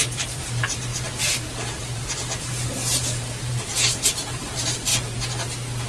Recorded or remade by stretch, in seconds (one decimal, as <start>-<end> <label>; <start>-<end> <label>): 0.0-4.9 remade; 4.9-5.9 recorded